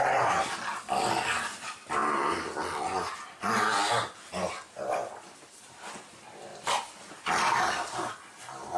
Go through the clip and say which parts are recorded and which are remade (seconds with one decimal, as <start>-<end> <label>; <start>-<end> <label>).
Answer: 0.0-8.8 recorded